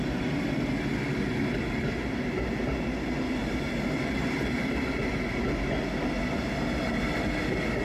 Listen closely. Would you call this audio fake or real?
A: real